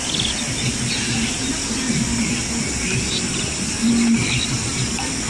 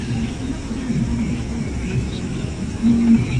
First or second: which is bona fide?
first